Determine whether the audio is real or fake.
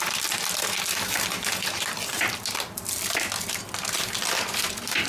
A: real